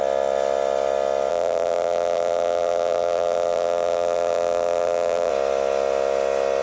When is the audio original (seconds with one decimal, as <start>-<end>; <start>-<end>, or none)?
0.0-1.3; 5.3-6.6